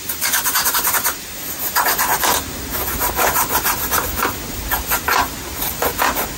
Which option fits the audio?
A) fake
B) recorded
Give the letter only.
B